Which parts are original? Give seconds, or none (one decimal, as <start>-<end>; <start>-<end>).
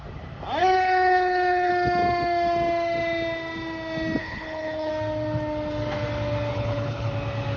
0.0-0.6; 1.7-4.2; 4.9-6.5; 7.1-7.6